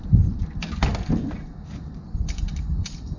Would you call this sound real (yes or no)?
yes